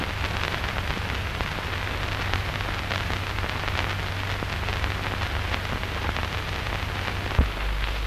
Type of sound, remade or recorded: recorded